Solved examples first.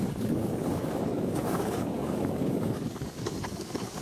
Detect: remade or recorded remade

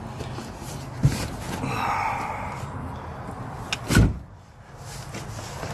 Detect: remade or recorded recorded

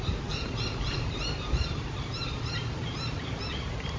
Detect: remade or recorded remade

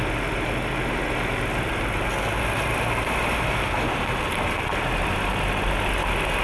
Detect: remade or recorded recorded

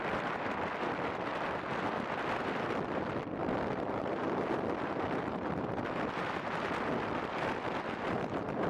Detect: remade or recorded remade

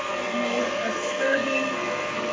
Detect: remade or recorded remade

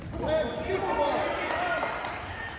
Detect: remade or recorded recorded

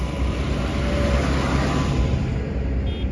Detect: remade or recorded recorded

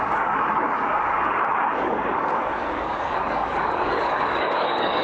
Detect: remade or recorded remade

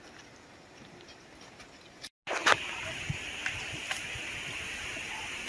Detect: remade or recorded recorded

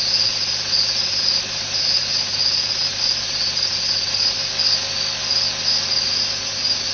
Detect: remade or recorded recorded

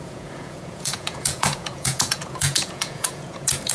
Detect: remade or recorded remade